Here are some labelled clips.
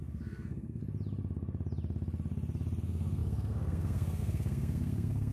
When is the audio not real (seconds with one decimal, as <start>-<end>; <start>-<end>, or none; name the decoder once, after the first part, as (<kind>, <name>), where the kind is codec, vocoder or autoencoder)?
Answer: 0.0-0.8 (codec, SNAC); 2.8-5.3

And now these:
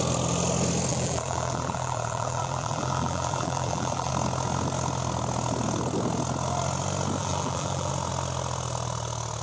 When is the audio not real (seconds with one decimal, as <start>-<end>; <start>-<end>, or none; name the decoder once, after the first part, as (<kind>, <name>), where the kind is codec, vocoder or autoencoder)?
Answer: 0.9-4.1 (vocoder, BigVGAN v2); 7.2-7.9

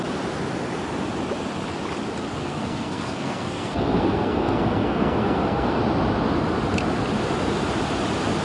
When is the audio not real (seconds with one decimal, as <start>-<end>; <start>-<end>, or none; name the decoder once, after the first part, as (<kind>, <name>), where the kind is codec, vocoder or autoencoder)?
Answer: 2.4-5.8 (codec, SNAC)

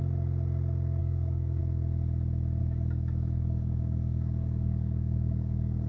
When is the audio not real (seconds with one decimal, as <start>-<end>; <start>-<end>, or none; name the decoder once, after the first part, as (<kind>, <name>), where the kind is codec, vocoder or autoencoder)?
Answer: 1.0-1.6 (codec, DAC); 2.6-5.9